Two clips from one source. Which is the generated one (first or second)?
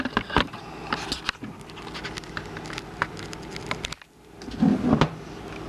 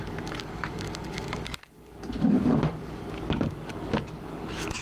second